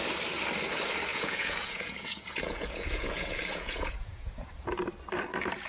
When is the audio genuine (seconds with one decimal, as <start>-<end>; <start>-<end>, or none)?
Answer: 0.0-1.1; 4.5-5.7